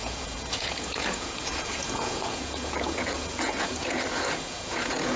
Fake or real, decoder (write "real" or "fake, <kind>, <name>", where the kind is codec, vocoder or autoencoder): fake, vocoder, Vocos